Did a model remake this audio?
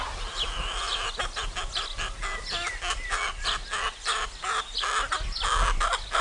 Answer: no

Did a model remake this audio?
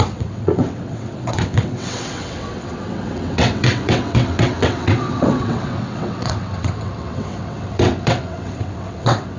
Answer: yes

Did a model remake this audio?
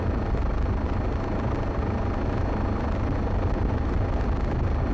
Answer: no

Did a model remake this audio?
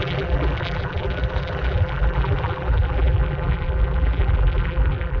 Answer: yes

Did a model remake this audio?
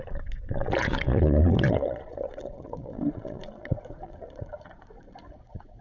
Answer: yes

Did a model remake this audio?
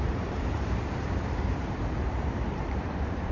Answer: yes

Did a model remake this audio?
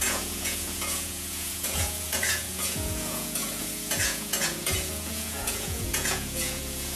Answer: yes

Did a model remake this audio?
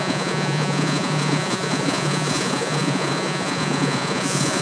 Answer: yes